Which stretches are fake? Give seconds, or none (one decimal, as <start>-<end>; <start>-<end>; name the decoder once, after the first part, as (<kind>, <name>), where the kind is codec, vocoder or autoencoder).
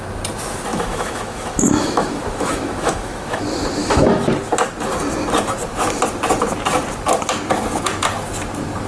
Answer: 0.7-3.4 (autoencoder, DAC-VAE); 3.8-4.3